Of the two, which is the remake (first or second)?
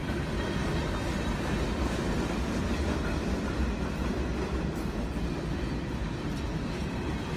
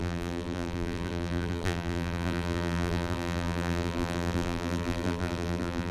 second